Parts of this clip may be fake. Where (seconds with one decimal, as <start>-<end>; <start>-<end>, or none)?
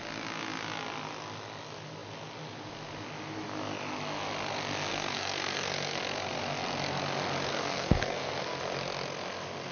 4.9-6.0; 7.5-8.6